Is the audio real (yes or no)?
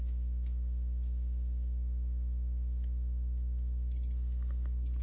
yes